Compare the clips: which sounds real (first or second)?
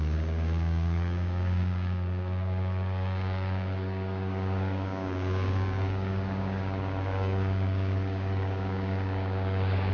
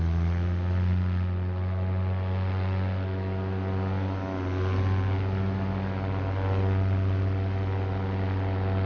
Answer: second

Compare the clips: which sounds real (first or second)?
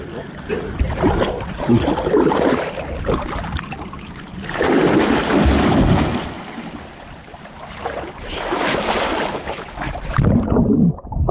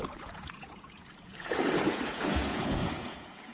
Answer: first